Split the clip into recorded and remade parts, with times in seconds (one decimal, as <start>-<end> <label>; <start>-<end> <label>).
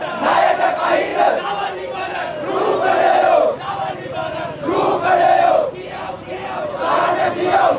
0.0-7.8 recorded